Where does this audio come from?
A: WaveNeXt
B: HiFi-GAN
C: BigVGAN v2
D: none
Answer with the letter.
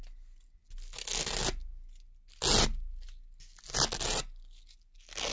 D